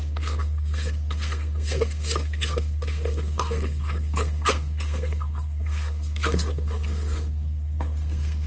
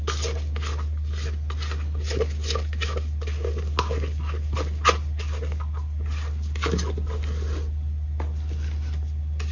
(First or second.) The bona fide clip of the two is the second